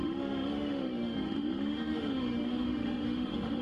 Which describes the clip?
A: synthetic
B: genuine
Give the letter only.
A